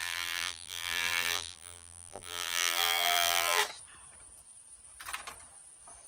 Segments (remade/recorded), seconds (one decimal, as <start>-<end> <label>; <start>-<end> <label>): 0.0-3.6 remade; 3.6-6.1 recorded